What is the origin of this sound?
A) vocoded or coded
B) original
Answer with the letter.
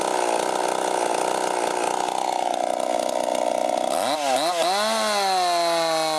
B